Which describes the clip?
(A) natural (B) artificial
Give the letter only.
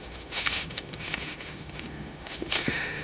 B